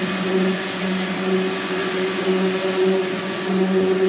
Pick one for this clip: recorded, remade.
remade